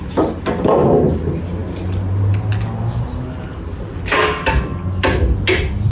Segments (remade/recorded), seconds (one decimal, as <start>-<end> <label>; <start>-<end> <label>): 0.0-5.9 recorded

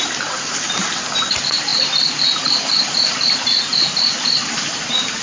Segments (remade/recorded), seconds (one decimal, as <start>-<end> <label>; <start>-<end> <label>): 0.0-5.2 remade